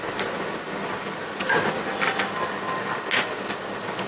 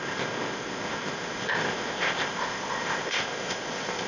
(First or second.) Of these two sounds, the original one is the first